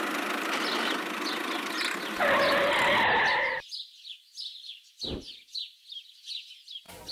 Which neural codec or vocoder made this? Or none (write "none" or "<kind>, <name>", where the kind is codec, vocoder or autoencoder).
none